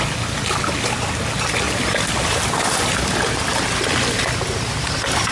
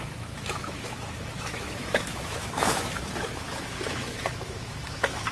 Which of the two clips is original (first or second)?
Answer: first